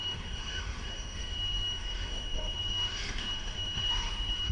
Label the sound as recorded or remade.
remade